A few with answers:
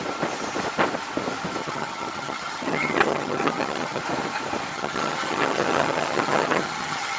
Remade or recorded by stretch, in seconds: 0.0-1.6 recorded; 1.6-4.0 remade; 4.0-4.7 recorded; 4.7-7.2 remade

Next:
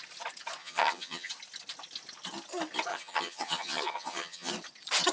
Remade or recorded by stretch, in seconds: 0.0-0.6 recorded; 0.6-1.3 remade; 1.3-2.9 recorded; 2.9-4.5 remade; 4.5-5.1 recorded